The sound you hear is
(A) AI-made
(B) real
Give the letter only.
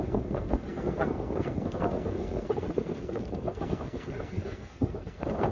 A